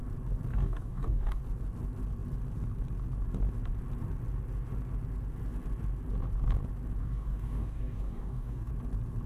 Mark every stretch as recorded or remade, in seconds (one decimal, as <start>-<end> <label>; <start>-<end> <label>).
0.0-0.5 recorded; 0.5-1.4 remade; 1.4-7.0 recorded; 7.0-8.7 remade; 8.7-9.3 recorded